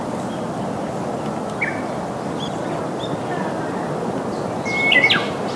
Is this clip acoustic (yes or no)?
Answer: yes